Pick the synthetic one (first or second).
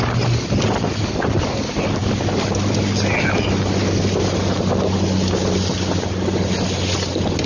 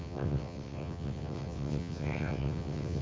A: second